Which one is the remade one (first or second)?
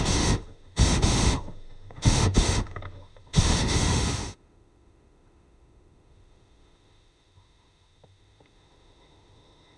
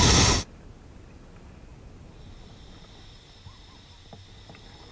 first